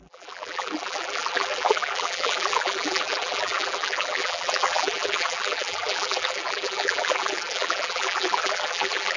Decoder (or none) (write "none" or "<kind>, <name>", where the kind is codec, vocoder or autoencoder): vocoder, BigVGAN v2